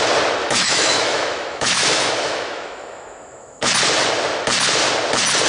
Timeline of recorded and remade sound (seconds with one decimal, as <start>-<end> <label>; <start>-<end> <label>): 0.0-0.4 recorded; 0.4-3.7 remade; 3.7-5.5 recorded